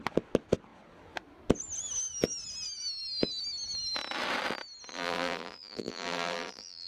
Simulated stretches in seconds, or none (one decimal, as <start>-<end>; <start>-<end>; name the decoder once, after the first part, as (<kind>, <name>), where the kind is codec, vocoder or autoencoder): 4.9-6.9 (vocoder, BigVGAN v2)